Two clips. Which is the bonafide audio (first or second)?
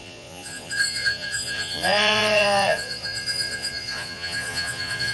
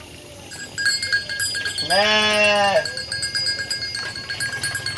second